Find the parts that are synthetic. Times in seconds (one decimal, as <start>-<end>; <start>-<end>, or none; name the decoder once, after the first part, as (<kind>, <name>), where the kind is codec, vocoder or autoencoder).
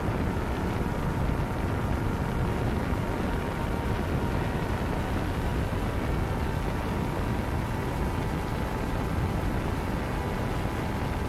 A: none